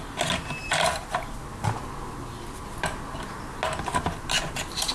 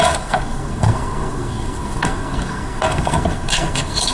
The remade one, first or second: second